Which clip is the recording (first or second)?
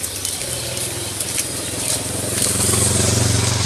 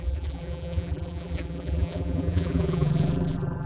first